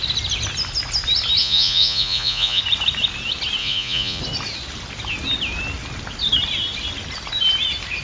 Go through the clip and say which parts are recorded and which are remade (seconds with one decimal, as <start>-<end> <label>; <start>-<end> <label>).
0.0-1.4 recorded; 1.4-2.6 remade; 2.6-3.6 recorded; 3.6-4.2 remade; 4.2-8.0 recorded